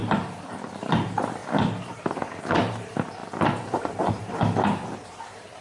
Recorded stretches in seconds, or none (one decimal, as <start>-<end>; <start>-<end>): 1.4-2.3; 3.2-3.8